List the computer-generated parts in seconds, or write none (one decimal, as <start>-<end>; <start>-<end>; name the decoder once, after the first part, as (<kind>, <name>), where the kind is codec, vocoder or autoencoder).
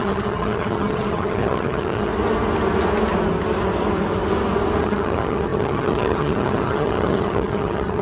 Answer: 0.0-2.1 (vocoder, HiFi-GAN); 4.8-8.0